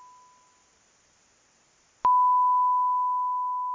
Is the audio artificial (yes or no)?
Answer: no